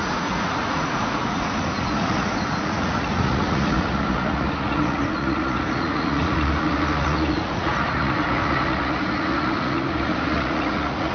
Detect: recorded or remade remade